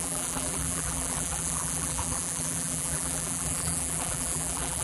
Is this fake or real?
fake